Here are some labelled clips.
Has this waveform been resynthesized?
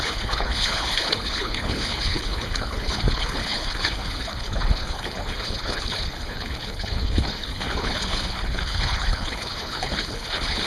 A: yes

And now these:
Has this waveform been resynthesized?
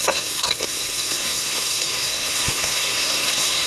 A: yes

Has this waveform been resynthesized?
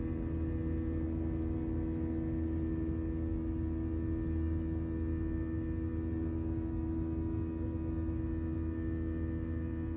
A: no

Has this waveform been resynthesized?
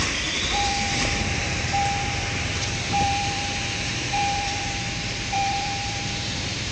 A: yes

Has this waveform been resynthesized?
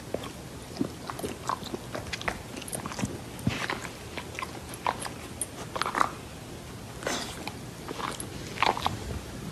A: no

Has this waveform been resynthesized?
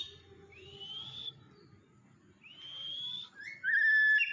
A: no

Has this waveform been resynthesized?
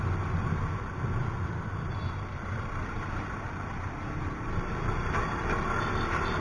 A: no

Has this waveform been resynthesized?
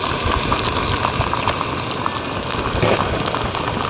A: no